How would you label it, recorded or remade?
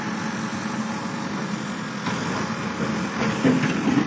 recorded